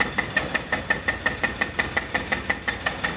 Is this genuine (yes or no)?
yes